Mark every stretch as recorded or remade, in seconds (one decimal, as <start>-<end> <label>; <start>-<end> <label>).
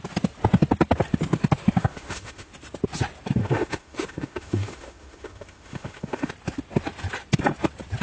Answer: 0.0-1.8 recorded; 1.8-2.5 remade; 2.5-3.4 recorded; 3.4-6.3 remade; 6.3-8.0 recorded